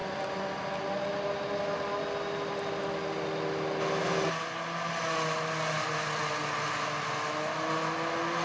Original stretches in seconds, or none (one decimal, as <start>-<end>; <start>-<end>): 0.0-8.4

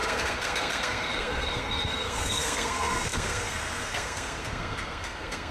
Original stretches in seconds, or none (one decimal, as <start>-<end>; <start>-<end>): none

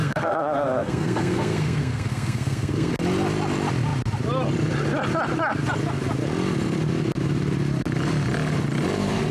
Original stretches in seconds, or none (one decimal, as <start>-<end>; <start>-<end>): 2.9-9.3